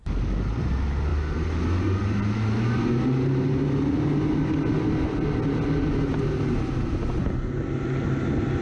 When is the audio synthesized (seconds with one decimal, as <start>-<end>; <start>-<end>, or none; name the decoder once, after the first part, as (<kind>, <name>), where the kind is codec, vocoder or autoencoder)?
none

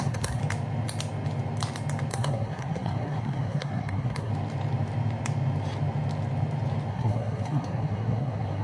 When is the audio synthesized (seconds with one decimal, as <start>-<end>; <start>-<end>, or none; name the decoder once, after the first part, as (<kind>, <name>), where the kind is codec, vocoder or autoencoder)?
0.0-0.4 (codec, SNAC); 2.1-4.3; 6.9-8.6

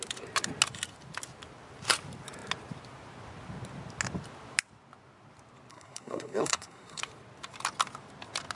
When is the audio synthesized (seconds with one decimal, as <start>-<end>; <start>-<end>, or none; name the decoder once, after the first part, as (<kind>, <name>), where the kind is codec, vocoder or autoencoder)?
5.7-7.0 (codec, SNAC)

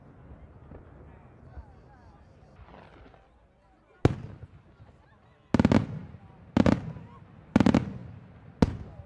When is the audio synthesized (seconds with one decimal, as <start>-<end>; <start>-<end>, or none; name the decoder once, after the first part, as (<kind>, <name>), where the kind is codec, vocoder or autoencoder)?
none

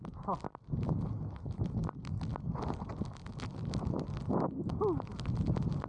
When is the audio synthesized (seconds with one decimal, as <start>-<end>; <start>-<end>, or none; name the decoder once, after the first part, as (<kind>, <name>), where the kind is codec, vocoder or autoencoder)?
none

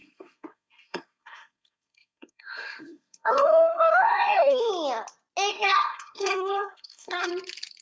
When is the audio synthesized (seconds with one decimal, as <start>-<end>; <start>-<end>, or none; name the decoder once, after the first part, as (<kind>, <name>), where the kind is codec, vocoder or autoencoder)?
0.0-4.7 (codec, SNAC); 5.5-7.3

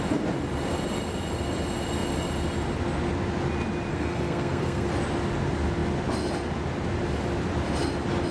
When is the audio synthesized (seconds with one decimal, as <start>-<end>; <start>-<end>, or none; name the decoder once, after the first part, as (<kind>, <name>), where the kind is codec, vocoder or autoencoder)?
3.9-4.9 (codec, SNAC)

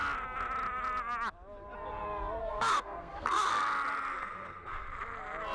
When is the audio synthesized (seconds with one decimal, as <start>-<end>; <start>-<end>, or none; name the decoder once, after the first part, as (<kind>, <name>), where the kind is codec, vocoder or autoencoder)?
2.4-3.5 (codec, SNAC); 4.2-4.9